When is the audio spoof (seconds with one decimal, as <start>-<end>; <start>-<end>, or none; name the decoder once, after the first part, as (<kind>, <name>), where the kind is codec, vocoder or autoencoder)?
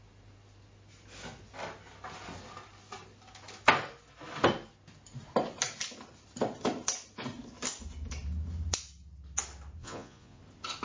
9.8-10.4 (vocoder, Vocos)